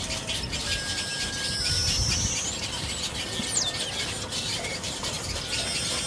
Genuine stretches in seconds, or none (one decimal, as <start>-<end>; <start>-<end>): 0.0-6.1